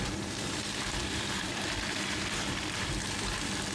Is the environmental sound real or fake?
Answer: fake